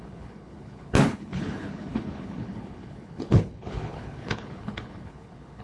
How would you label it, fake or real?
fake